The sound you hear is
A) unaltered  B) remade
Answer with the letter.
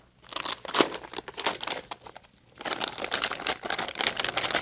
A